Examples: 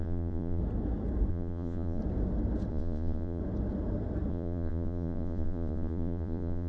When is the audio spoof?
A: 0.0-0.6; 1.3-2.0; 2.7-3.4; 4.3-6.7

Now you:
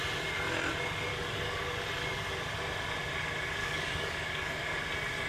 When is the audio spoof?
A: 1.1-1.6; 3.6-4.8

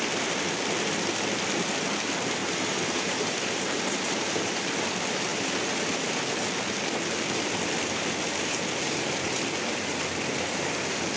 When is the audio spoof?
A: 2.4-4.6

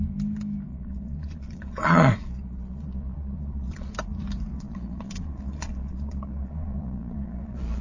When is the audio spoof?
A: 0.7-3.9; 4.5-7.8

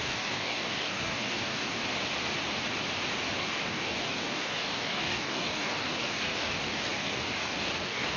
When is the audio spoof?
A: 0.0-1.8; 3.4-8.2

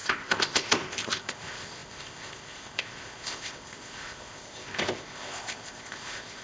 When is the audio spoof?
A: 0.0-6.4

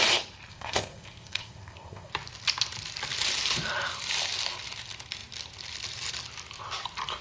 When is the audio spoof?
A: 0.5-2.1